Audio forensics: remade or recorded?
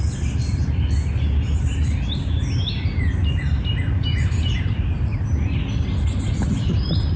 recorded